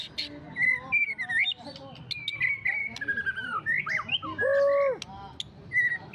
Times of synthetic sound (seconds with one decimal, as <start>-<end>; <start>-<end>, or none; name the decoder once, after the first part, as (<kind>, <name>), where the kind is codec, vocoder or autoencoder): none